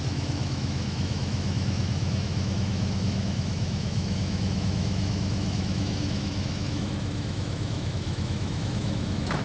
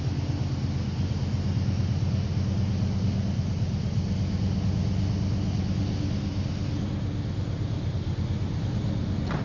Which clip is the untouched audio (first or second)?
second